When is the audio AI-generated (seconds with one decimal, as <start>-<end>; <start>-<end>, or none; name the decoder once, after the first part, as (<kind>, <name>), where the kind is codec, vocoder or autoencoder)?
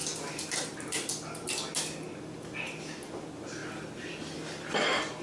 none